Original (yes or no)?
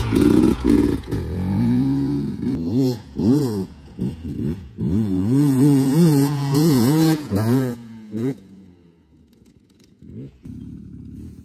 no